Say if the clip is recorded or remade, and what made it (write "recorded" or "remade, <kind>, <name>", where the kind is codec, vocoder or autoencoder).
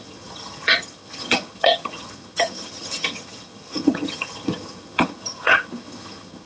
remade, vocoder, HiFi-GAN